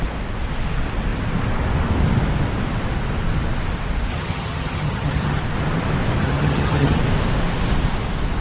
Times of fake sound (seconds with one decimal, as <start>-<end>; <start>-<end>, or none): 4.1-5.4; 6.2-7.0